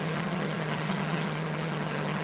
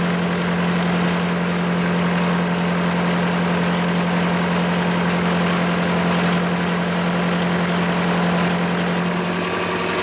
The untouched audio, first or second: second